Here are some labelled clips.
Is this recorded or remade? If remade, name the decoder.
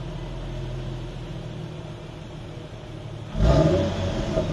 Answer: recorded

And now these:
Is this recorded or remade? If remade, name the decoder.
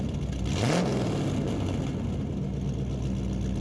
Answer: recorded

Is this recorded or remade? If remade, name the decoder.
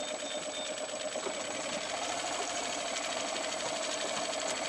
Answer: recorded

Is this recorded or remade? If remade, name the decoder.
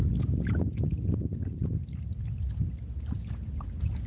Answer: recorded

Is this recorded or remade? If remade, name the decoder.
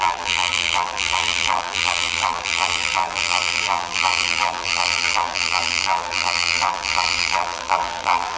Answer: remade, vocoder, BigVGAN v2